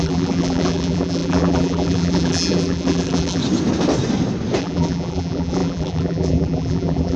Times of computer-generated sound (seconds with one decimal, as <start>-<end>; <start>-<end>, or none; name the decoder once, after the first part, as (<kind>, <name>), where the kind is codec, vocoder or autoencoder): 0.0-3.4 (vocoder, BigVGAN v2); 4.6-7.2